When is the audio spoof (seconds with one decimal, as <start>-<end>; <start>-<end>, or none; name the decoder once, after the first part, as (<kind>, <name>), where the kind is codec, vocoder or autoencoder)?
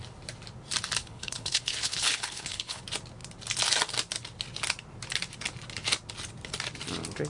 1.0-2.8 (codec, HILCodec)